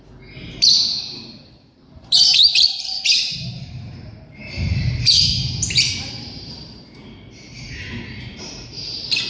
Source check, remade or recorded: remade